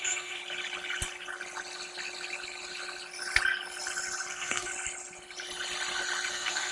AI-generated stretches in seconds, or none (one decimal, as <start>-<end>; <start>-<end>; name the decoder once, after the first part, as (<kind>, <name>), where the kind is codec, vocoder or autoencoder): 0.0-0.4 (codec, SNAC); 4.3-4.7; 6.3-6.7